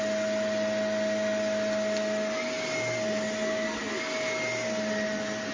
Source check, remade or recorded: recorded